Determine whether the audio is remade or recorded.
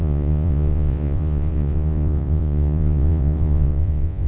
remade